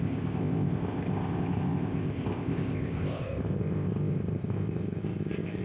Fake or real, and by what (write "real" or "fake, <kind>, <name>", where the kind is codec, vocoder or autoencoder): fake, codec, ZipCodec